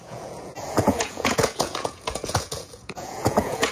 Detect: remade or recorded remade